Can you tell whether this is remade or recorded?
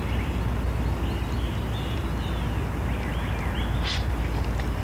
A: recorded